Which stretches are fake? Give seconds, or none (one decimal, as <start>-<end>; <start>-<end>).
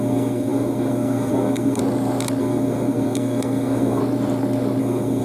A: 0.0-1.8; 2.4-4.0; 4.8-5.2